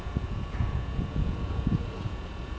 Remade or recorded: remade